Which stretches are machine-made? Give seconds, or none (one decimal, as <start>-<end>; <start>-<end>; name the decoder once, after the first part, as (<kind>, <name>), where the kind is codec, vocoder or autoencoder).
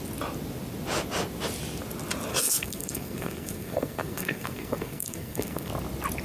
2.3-5.7 (codec, SNAC)